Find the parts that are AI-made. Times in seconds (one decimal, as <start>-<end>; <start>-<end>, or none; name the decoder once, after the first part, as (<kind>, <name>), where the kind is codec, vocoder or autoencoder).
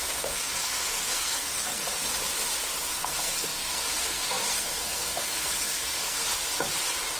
0.0-1.8 (codec, SNAC); 2.9-6.2